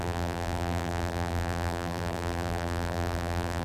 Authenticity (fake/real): fake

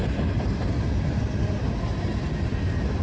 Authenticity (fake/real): real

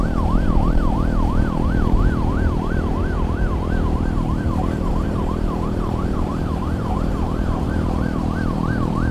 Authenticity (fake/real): fake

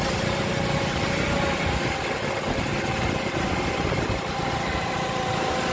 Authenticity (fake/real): real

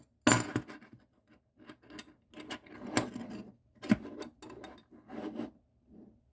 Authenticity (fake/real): real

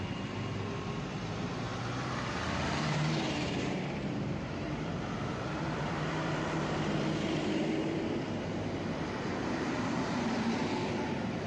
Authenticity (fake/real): fake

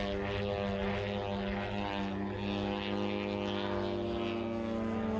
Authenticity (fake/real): real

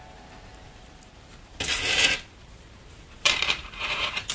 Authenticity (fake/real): fake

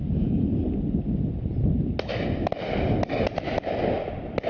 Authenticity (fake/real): real